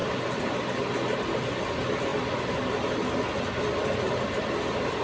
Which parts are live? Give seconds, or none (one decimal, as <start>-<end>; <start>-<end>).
0.0-5.0